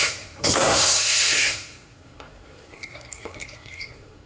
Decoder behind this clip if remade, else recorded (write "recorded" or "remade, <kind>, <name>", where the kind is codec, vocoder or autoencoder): remade, codec, SNAC